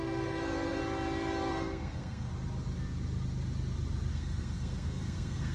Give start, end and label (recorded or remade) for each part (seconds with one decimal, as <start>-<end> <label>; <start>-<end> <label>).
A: 0.0-0.8 remade; 0.8-1.5 recorded; 1.5-2.3 remade; 2.3-4.1 recorded; 4.1-5.5 remade